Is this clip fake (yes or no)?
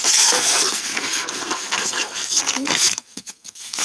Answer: yes